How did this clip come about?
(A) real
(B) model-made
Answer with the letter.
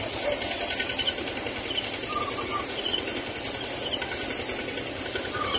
A